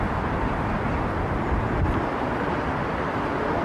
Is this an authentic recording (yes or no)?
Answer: yes